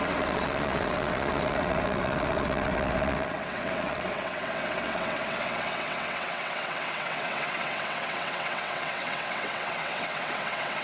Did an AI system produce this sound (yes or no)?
yes